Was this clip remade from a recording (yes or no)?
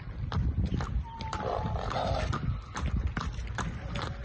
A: yes